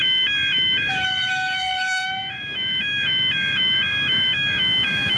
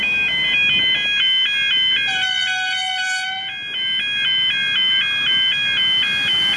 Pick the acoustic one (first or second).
second